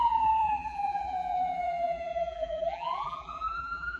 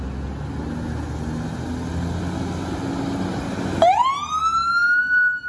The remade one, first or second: first